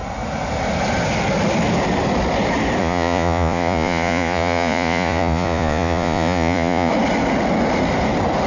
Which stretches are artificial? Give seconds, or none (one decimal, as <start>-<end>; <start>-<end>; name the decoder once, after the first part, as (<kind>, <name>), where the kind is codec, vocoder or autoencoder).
2.8-6.9 (vocoder, Vocos)